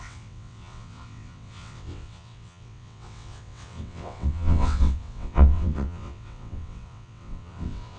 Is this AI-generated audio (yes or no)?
yes